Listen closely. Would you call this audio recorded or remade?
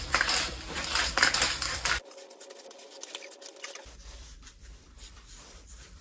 remade